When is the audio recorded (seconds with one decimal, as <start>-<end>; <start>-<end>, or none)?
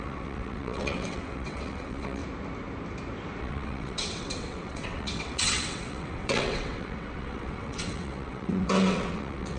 2.2-3.4